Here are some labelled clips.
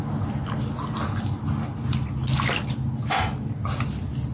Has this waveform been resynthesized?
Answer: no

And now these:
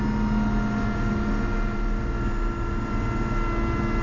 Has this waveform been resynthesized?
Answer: no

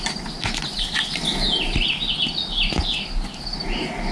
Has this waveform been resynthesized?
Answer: no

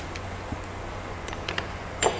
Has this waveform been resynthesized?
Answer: yes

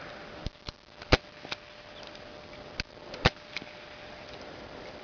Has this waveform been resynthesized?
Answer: no